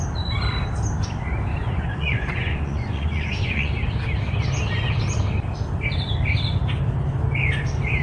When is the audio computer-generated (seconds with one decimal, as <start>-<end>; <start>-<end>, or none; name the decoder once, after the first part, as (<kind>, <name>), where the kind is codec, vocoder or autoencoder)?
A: 1.6-3.7 (vocoder, Vocos)

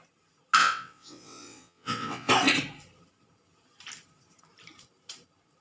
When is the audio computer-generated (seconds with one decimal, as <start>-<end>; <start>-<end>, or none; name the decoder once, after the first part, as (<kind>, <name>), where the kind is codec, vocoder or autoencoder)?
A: 0.6-2.3 (vocoder, WaveNeXt)

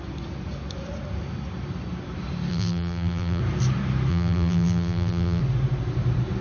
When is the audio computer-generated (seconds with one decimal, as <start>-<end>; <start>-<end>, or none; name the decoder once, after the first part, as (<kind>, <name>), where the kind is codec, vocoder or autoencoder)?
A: 2.5-3.4 (vocoder, BigVGAN v2); 4.1-5.4

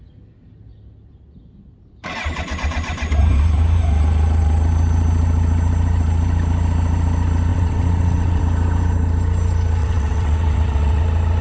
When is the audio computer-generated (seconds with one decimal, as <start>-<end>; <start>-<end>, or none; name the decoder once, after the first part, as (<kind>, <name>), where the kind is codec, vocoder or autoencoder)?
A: 7.5-8.4 (vocoder, WaveNeXt); 9.8-11.0

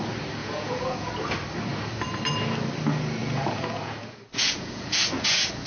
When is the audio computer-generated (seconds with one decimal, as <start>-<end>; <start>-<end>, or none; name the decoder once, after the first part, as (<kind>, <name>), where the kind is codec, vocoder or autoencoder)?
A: 0.4-1.1 (vocoder, Vocos); 3.2-5.7

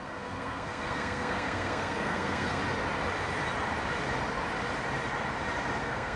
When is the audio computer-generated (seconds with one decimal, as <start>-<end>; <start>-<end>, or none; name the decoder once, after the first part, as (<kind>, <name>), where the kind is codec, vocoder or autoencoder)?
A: 0.0-2.6 (codec, SNAC); 5.8-6.2

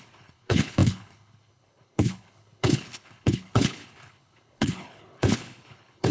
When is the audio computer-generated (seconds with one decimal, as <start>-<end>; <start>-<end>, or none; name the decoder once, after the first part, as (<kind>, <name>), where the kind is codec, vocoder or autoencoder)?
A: 0.0-6.1 (codec, HILCodec)

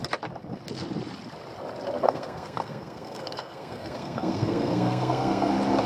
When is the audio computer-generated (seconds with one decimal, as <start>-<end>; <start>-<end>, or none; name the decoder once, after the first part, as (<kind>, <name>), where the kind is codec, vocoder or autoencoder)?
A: 2.0-5.5 (codec, SNAC)